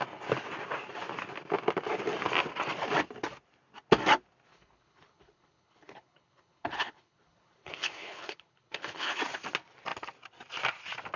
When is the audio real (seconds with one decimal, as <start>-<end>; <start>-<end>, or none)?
0.0-4.5; 9.2-11.2